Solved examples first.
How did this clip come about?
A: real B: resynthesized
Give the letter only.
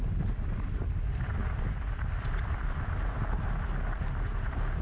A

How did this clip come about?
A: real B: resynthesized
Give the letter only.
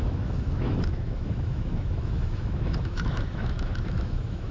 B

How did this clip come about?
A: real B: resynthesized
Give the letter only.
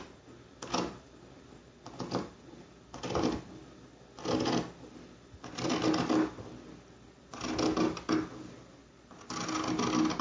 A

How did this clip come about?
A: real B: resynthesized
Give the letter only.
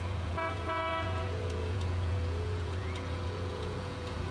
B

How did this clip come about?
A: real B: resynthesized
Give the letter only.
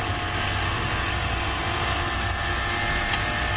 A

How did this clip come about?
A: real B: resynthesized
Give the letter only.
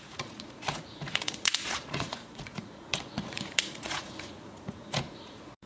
B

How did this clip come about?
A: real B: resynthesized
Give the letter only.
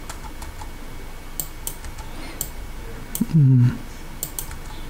A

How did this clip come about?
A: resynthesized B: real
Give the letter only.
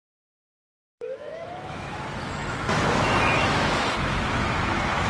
A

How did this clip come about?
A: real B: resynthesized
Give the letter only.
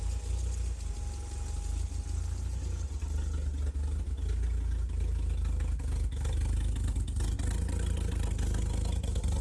A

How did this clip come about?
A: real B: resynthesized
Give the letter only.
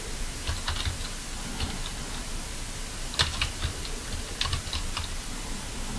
A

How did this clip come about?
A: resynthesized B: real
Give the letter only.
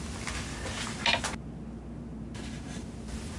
B